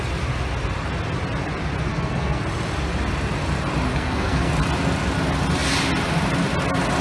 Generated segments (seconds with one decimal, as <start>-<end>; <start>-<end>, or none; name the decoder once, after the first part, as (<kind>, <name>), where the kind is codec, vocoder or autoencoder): 1.9-2.4 (codec, SNAC); 3.9-4.5